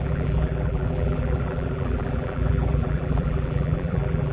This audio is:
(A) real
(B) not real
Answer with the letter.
B